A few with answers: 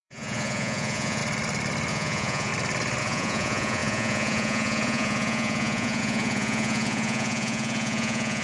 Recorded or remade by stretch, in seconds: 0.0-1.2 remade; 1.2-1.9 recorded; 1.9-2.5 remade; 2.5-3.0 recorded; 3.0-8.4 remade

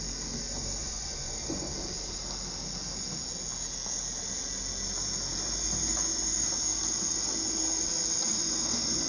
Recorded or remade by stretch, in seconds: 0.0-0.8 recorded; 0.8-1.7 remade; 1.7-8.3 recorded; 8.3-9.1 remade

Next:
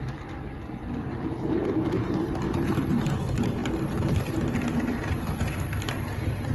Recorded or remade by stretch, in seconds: 0.0-6.5 recorded

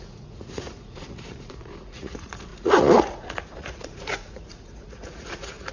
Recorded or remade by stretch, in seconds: 0.0-5.7 remade

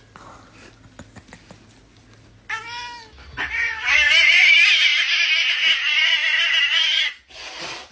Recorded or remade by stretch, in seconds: 0.0-7.9 recorded

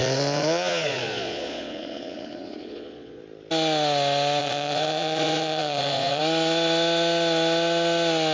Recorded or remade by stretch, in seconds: 0.0-3.2 remade; 3.2-4.4 recorded; 4.4-6.2 remade; 6.2-8.3 recorded